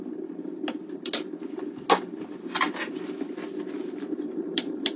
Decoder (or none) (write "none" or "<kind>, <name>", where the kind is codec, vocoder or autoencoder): none